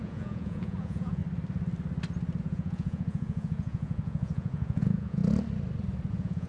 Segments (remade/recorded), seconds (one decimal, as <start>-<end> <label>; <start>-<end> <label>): 0.0-1.2 remade; 1.2-2.4 recorded; 2.4-5.2 remade; 5.2-6.1 recorded; 6.1-6.5 remade